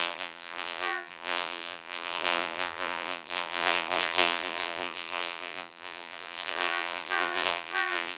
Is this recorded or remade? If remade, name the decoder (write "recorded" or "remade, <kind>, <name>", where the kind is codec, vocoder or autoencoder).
remade, vocoder, BigVGAN v2